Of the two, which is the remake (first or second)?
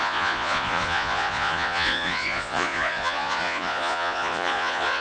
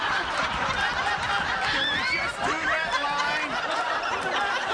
first